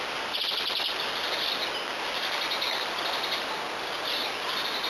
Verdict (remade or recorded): recorded